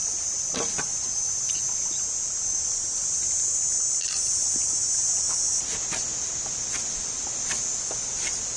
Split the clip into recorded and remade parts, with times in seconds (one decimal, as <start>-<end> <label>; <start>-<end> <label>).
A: 0.0-8.6 recorded